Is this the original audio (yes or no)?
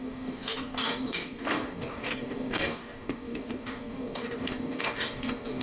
no